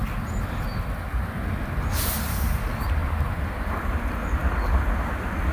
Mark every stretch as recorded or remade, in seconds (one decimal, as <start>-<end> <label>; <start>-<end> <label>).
0.0-0.8 remade; 0.8-3.0 recorded; 3.0-4.0 remade; 4.0-5.5 recorded